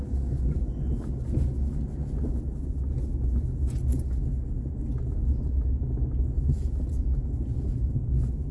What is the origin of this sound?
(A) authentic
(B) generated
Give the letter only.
A